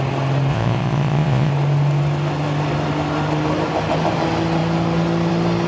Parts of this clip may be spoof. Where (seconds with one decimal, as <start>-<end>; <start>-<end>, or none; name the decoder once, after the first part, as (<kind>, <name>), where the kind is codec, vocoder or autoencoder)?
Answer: 0.5-1.5 (vocoder, Vocos)